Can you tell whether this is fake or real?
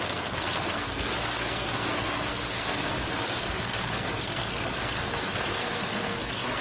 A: fake